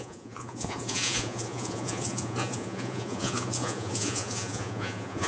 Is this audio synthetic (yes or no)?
yes